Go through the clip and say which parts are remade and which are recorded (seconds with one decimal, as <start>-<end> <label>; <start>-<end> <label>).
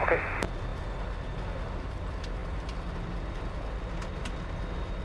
0.0-5.0 recorded